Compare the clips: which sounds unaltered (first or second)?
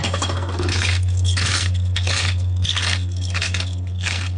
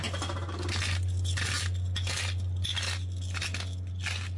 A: second